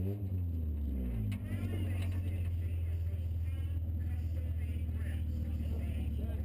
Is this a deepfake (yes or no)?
no